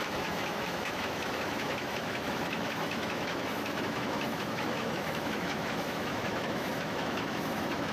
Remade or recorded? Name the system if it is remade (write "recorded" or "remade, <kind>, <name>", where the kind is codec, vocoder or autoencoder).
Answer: remade, autoencoder, DAC-VAE